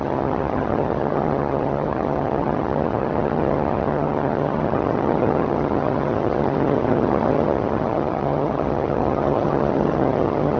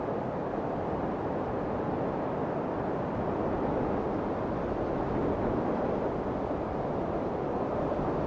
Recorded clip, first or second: second